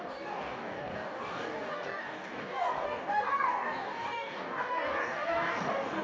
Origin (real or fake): fake